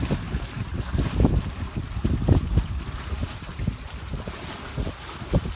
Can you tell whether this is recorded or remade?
recorded